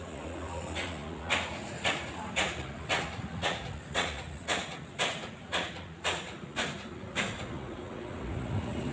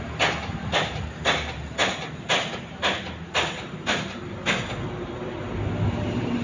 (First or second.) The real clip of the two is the second